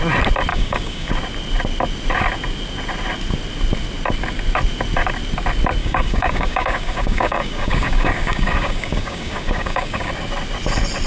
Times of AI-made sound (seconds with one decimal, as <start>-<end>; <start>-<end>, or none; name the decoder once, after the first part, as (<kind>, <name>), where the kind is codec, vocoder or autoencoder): 0.5-1.1 (codec, DAC); 5.8-10.1